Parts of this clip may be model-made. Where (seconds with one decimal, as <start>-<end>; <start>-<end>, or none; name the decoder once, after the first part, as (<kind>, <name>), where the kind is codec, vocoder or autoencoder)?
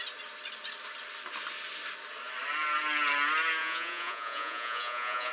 3.6-5.3 (vocoder, Vocos)